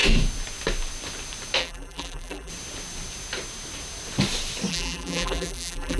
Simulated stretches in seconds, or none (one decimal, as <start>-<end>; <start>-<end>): 1.6-2.5; 4.7-6.0